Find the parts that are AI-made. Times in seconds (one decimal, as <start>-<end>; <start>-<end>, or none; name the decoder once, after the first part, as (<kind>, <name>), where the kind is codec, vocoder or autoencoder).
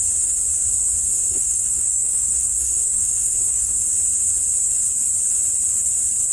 1.1-3.8 (codec, SNAC)